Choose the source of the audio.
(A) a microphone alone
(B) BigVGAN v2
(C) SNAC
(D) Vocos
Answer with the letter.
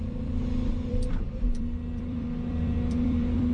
B